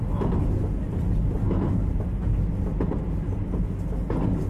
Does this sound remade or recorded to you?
recorded